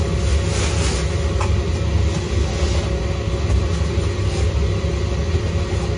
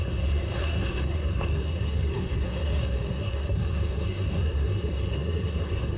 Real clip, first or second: first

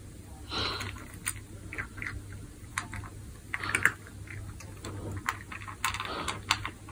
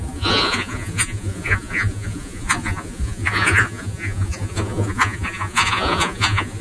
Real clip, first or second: first